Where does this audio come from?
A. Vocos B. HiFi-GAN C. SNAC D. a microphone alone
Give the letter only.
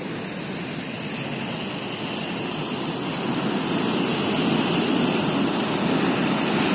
D